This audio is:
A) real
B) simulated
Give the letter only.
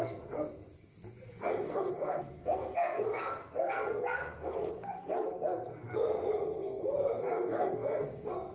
B